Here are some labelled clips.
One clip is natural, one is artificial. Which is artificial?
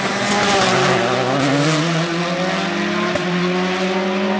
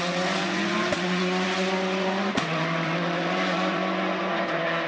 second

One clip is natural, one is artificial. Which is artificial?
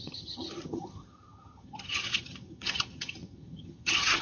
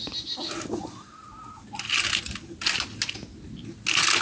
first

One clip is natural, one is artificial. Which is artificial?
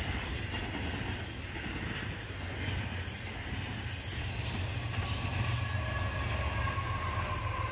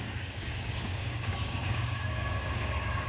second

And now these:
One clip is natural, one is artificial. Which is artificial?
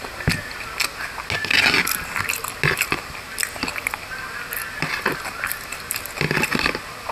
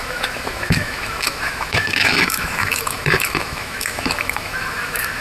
second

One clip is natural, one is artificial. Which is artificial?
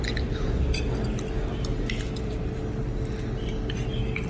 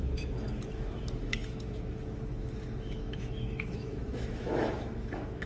second